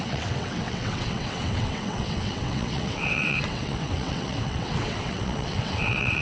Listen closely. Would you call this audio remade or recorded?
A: remade